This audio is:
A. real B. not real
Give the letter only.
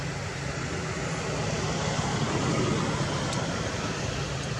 A